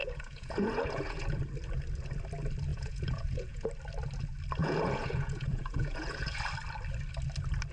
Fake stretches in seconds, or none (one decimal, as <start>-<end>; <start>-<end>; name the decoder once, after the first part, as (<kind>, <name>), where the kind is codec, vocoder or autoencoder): 0.0-1.4 (vocoder, Vocos); 2.7-3.7; 4.6-6.4